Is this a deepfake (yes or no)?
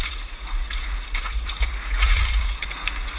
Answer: yes